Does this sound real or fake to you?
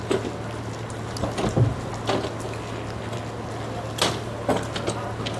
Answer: real